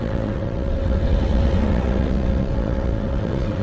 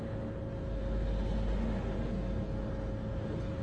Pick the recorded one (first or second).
second